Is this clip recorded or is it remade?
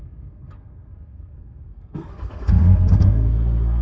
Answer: remade